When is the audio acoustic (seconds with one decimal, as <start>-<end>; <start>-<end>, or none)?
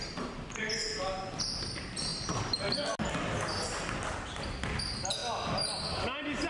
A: 0.0-6.5